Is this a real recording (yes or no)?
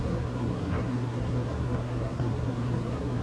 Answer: no